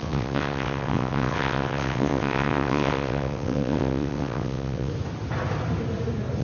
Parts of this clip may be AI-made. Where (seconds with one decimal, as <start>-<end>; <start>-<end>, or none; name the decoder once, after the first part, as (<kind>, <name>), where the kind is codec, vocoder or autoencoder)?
0.0-4.9 (vocoder, WaveNeXt)